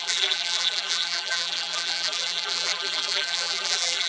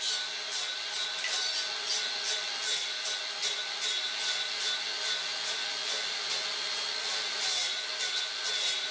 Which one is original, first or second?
second